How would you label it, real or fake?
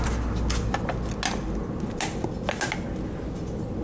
real